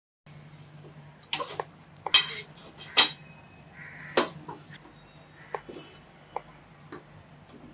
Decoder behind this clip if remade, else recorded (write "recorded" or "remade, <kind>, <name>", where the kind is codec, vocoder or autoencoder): recorded